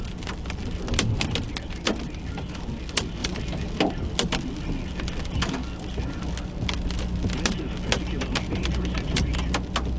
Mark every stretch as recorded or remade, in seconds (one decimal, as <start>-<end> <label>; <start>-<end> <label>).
0.0-10.0 recorded